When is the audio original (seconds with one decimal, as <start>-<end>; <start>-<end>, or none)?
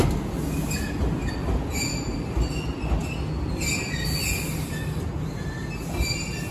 0.0-6.5